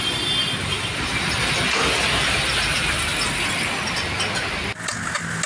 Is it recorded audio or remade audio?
recorded